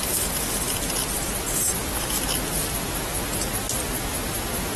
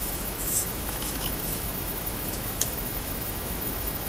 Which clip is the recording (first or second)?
first